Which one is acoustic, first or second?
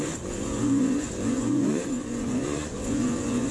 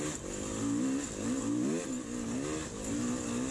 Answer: second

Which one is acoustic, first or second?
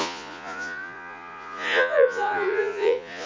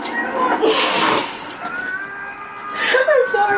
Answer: second